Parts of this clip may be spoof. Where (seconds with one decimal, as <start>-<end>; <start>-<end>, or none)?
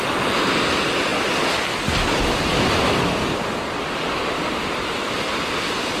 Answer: none